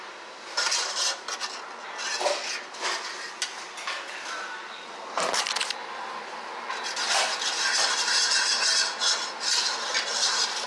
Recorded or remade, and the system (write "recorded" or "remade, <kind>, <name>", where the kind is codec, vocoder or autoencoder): recorded